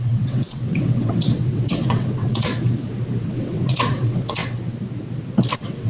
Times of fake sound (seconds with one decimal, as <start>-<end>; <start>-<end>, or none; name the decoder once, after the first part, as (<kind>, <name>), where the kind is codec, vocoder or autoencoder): 0.0-2.5 (vocoder, WaveNeXt); 3.2-4.4; 5.5-5.9